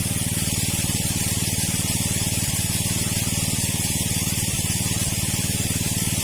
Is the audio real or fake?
real